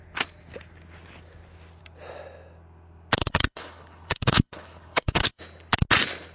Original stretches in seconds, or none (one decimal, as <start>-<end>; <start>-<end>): 0.0-3.2; 5.4-6.3